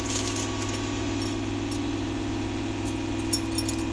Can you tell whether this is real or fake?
real